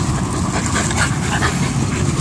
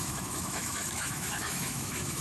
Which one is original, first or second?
first